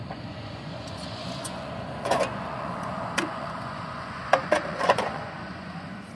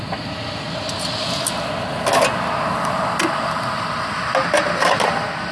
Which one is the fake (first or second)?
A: first